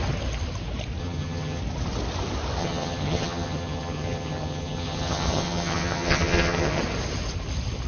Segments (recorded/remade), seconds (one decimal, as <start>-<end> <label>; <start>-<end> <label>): 0.0-1.0 recorded; 1.0-1.6 remade; 1.6-2.6 recorded; 2.6-6.8 remade; 6.8-7.9 recorded